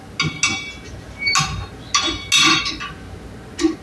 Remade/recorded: recorded